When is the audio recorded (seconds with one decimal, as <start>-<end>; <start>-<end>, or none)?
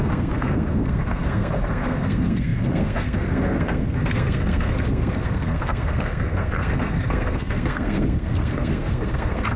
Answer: none